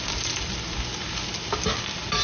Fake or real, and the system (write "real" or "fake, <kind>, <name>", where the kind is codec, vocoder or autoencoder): real